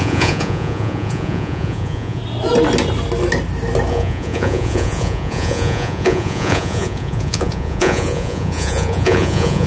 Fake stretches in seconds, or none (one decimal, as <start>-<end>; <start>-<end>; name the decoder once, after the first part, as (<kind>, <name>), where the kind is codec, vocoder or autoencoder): 0.0-2.2 (vocoder, Vocos); 3.9-9.7